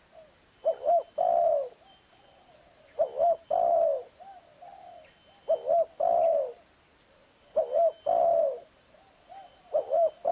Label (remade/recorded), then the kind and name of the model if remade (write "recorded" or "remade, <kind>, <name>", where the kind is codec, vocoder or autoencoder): recorded